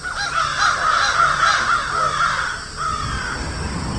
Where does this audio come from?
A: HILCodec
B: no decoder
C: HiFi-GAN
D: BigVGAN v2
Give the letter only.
B